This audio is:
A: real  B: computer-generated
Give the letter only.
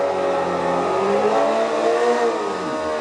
A